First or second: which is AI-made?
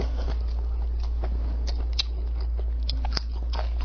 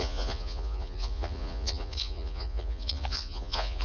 second